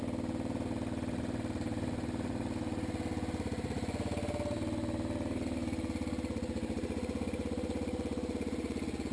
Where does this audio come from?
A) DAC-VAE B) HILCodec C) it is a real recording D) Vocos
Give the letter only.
C